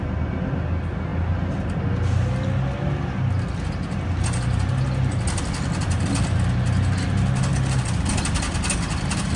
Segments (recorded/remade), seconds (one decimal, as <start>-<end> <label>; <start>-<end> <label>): 0.0-9.4 recorded